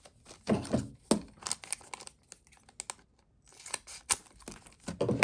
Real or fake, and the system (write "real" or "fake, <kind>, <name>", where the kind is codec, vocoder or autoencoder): real